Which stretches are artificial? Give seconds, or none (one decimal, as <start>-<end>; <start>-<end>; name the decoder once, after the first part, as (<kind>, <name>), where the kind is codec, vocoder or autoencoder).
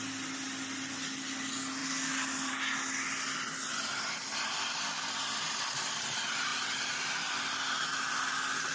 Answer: none